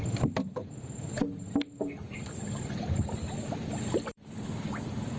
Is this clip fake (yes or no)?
no